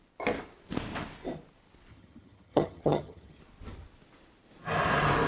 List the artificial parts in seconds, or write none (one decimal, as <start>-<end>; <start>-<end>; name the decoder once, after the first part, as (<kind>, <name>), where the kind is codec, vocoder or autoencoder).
1.9-3.4 (vocoder, HiFi-GAN)